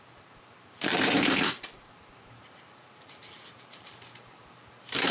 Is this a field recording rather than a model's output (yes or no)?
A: no